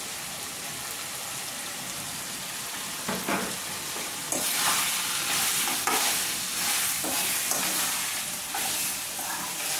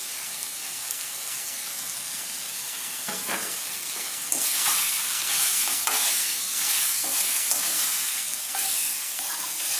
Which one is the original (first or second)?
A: first